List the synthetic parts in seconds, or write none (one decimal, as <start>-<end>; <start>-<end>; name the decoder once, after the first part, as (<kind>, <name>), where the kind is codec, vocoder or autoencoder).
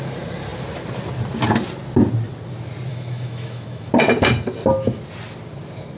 2.9-3.9 (autoencoder, DAC-VAE)